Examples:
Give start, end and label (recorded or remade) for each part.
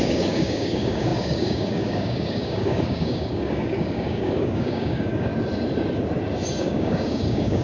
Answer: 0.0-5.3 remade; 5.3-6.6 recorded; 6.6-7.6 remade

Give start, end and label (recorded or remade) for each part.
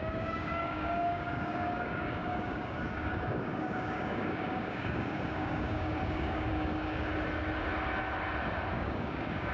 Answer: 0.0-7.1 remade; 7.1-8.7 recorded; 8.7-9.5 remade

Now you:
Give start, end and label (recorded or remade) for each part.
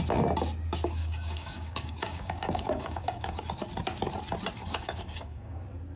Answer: 0.0-1.0 recorded; 1.0-3.4 remade; 3.4-4.6 recorded; 4.6-5.6 remade; 5.6-6.0 recorded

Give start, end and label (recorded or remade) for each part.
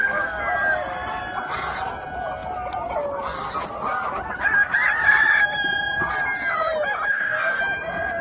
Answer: 0.0-7.1 recorded; 7.1-7.6 remade; 7.6-8.2 recorded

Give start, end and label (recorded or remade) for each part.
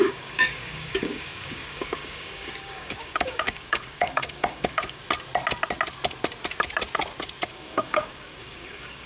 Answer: 0.0-5.0 remade; 5.0-7.5 recorded; 7.5-9.1 remade